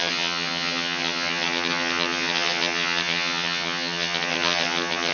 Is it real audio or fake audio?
fake